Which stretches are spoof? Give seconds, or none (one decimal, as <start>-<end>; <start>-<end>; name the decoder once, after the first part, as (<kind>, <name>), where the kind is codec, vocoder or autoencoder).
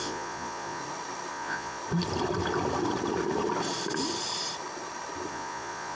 0.0-0.8 (vocoder, Vocos); 1.3-1.8; 5.3-5.9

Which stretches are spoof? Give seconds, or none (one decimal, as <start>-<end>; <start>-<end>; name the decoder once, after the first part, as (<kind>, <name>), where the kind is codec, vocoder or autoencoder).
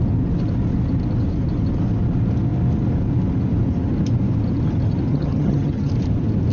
5.1-5.9 (vocoder, HiFi-GAN)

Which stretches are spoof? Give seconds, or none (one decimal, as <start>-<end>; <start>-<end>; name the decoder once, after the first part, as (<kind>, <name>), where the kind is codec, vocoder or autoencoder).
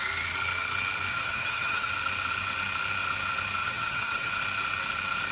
1.1-1.9 (vocoder, HiFi-GAN); 3.6-4.3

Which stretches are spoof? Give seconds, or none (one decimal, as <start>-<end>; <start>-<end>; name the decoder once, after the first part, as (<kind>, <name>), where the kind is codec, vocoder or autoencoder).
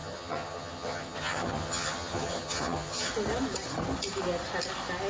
0.0-3.1 (vocoder, HiFi-GAN)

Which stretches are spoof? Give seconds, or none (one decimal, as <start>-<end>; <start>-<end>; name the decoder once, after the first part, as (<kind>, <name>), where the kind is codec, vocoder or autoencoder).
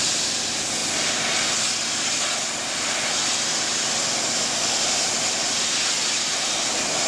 none